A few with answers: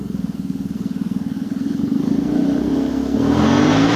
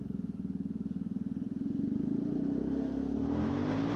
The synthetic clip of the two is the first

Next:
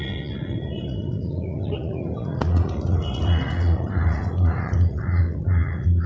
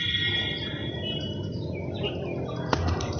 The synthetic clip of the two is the first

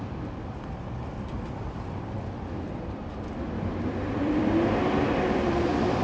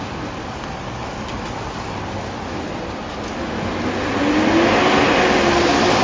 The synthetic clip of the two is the first